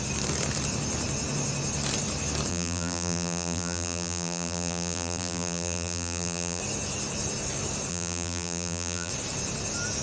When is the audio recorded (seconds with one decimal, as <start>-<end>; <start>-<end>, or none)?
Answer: 0.0-2.5; 6.6-7.9; 9.1-10.0